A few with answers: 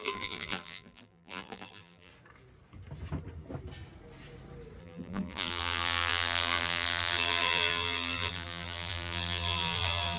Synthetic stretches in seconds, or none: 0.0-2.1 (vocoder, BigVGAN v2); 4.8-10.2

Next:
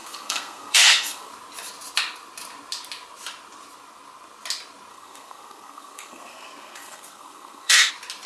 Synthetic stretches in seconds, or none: 0.0-1.3 (codec, SNAC); 4.9-7.9

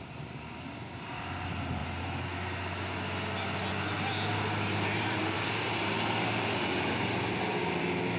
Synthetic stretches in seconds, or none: 4.3-6.6 (vocoder, BigVGAN v2)

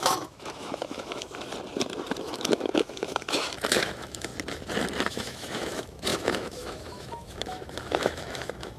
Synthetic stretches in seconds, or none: 0.0-1.5 (autoencoder, DAC-VAE); 2.2-4.3; 5.1-8.8